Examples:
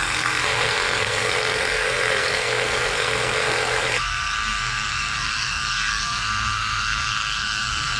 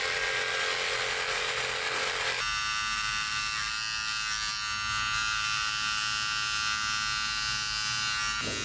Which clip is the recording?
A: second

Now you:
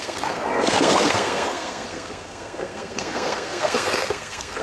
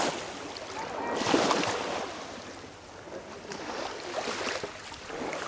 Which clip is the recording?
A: second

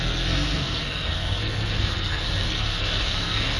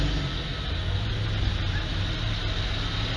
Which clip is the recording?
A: second